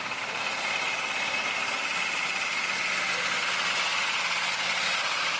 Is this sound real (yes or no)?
yes